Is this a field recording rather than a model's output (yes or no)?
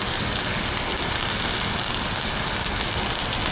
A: yes